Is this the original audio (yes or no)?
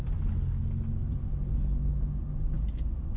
yes